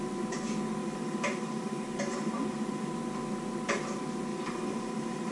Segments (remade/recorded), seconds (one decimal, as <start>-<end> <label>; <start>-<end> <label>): 0.0-0.8 recorded; 0.8-2.9 remade; 2.9-4.3 recorded; 4.3-5.3 remade